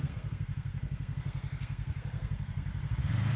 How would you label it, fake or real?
fake